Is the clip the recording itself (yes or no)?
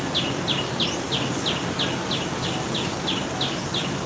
yes